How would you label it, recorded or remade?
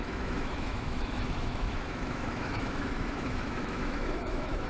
remade